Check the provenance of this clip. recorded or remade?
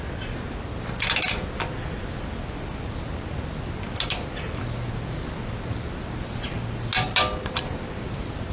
recorded